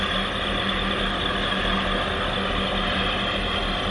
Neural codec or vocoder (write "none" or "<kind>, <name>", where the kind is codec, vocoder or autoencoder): none